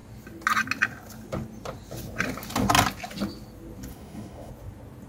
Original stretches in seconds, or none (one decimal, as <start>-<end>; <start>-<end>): 0.0-3.9; 4.5-5.1